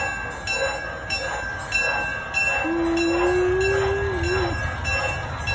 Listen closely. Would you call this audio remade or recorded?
recorded